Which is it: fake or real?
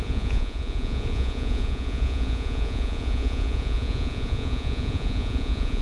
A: fake